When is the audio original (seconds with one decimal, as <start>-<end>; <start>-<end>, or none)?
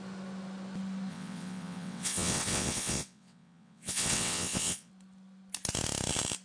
0.0-1.1; 4.9-6.4